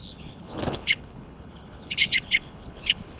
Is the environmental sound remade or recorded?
remade